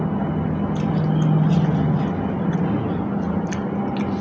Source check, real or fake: real